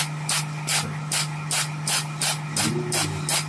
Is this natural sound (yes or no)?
yes